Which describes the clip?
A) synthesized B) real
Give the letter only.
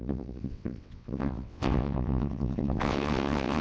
A